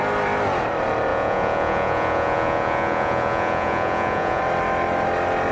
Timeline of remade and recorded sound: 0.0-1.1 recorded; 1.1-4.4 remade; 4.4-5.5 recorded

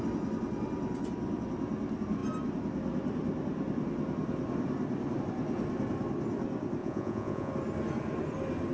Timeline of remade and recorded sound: 0.0-6.8 recorded; 6.8-7.5 remade; 7.5-8.7 recorded

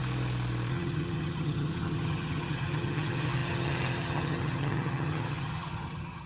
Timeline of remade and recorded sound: 0.0-0.7 recorded; 0.7-6.3 remade

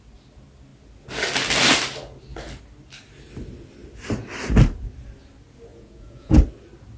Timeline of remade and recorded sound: 0.0-5.7 recorded; 5.7-6.4 remade; 6.4-7.0 recorded

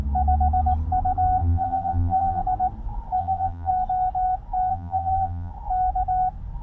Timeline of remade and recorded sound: 0.0-1.4 recorded; 1.4-2.4 remade; 2.4-3.2 recorded; 3.2-3.7 remade; 3.7-4.7 recorded; 4.7-5.5 remade; 5.5-6.6 recorded

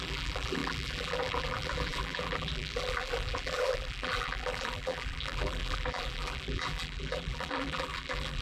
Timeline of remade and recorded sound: 0.0-8.4 remade

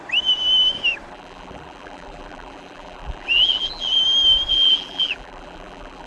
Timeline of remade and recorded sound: 0.0-1.1 recorded; 1.1-4.0 remade; 4.0-4.5 recorded; 4.5-6.1 remade

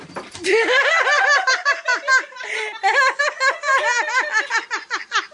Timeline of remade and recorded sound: 0.0-5.3 recorded